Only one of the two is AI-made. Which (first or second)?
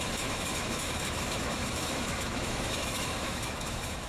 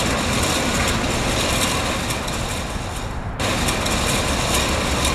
first